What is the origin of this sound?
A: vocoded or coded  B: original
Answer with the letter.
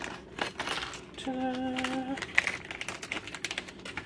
B